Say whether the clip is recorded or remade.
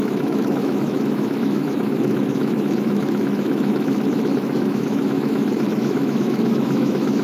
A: remade